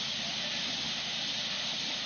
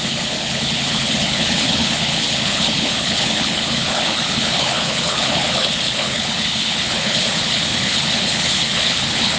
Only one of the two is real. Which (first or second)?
first